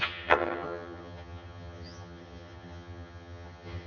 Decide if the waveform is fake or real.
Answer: fake